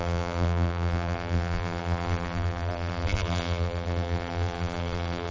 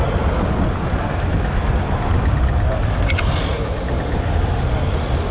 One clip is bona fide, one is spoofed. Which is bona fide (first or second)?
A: second